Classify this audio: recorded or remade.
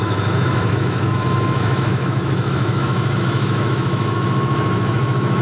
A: remade